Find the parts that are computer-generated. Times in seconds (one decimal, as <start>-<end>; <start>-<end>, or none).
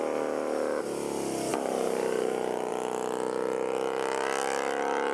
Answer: 1.5-2.7